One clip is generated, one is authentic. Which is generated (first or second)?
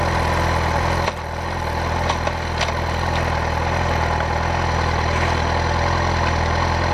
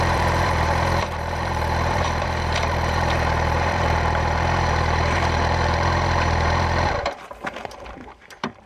second